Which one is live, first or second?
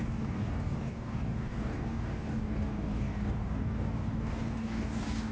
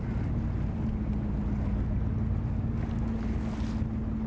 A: second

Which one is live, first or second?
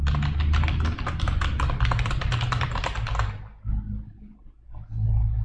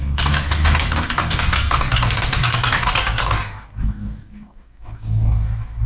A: first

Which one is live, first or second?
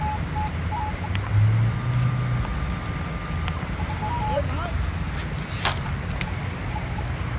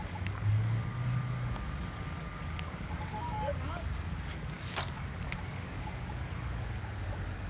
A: first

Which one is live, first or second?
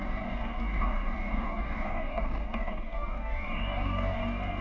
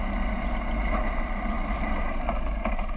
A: second